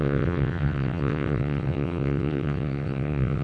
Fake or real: fake